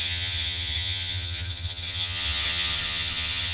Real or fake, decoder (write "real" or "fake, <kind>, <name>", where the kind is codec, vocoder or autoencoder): fake, vocoder, HiFi-GAN